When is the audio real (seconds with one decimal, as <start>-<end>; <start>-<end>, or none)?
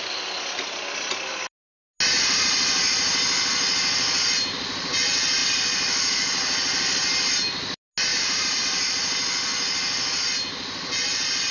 0.0-8.1; 8.6-11.5